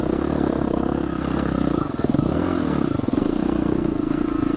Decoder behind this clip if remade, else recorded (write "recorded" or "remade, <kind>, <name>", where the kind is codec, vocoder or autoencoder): remade, codec, SNAC